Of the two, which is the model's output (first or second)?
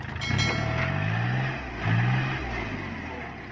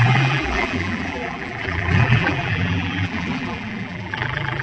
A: second